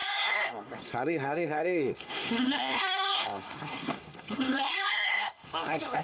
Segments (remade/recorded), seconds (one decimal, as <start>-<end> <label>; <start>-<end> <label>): 0.0-6.0 remade